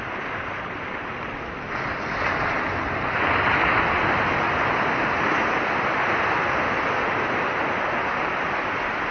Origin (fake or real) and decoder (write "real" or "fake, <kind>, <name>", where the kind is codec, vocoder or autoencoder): real